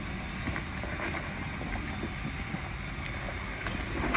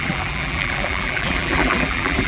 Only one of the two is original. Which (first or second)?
first